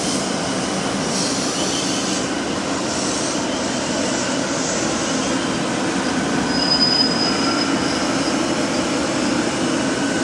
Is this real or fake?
real